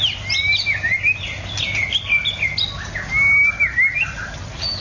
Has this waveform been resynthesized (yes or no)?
no